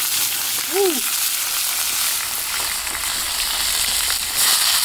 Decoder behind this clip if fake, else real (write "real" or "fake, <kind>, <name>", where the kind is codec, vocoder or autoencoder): real